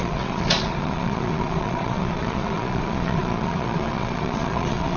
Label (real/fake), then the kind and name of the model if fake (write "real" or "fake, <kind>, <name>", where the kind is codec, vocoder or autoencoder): fake, vocoder, Vocos